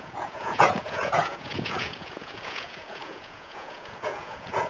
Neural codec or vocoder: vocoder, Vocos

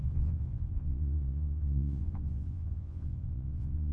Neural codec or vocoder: vocoder, Vocos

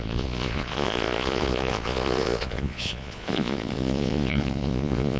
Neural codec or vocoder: vocoder, Vocos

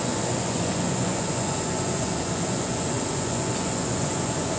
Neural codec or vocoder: vocoder, Vocos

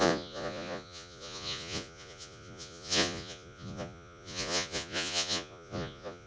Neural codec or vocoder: vocoder, Vocos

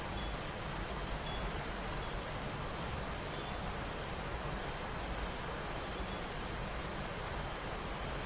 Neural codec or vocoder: none